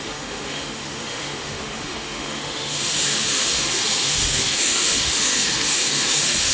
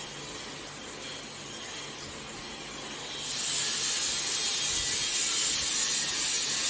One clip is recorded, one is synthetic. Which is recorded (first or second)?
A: second